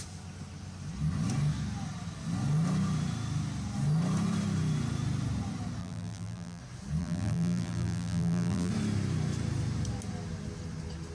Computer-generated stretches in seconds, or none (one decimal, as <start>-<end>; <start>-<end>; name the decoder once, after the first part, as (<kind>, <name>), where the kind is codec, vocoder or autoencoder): 5.8-6.6 (vocoder, BigVGAN v2); 7.0-8.7